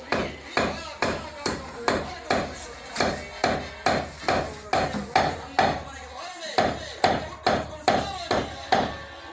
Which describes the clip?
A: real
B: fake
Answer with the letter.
A